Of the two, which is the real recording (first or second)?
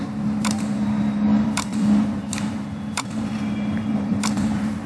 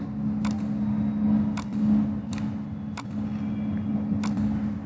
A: second